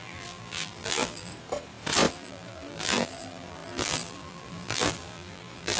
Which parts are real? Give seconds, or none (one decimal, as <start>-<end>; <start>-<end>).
1.3-2.1